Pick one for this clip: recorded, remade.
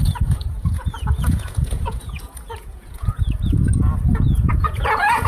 remade